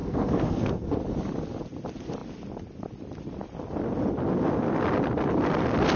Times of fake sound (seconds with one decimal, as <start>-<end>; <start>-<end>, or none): 0.0-1.0

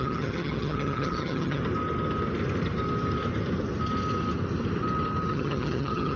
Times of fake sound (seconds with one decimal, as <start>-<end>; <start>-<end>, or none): 0.0-1.6; 5.3-6.2

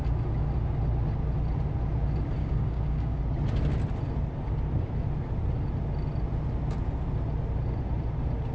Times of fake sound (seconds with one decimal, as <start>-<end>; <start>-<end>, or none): 2.4-3.2

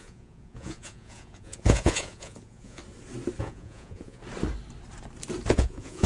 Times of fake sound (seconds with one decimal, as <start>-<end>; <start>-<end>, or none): 0.0-2.8; 3.4-4.2; 5.5-6.1